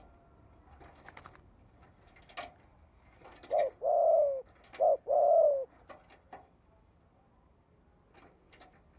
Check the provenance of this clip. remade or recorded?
recorded